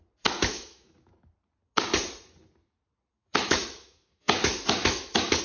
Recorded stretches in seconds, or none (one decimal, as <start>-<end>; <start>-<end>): 0.0-0.5; 1.1-3.2